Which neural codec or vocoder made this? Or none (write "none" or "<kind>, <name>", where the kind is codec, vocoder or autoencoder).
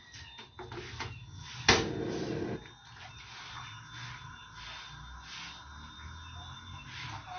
none